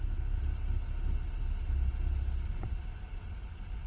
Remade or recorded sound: recorded